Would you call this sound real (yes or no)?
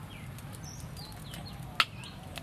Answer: yes